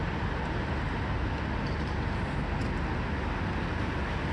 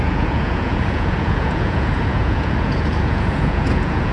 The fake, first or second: second